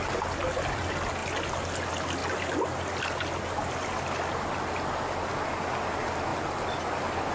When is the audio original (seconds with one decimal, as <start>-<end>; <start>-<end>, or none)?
0.0-7.3